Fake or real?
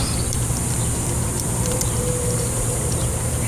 fake